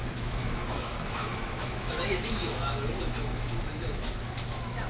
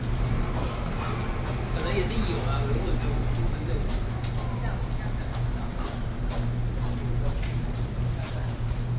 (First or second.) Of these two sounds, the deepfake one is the first